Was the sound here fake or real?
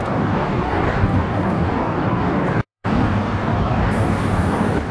fake